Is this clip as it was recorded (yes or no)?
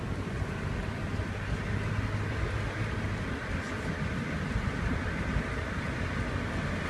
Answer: yes